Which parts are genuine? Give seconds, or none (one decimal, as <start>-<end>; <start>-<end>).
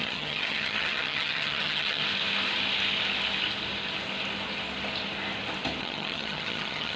2.0-5.8